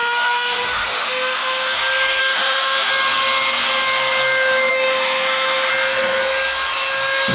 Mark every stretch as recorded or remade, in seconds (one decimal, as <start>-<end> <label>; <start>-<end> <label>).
0.0-1.8 remade; 1.8-2.2 recorded; 2.2-2.9 remade; 2.9-4.7 recorded; 4.7-5.7 remade; 5.7-7.3 recorded